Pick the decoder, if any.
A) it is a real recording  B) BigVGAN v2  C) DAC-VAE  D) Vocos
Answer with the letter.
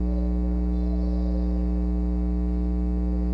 A